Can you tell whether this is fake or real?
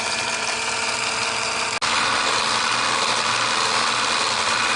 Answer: real